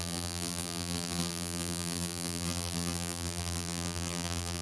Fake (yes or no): yes